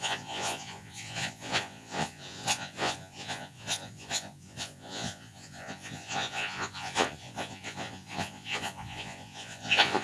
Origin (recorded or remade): remade